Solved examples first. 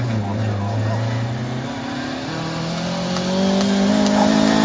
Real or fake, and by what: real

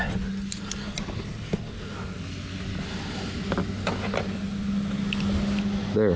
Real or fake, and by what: real